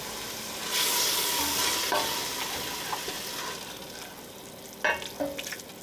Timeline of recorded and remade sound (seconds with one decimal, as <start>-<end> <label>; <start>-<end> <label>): 0.0-5.8 recorded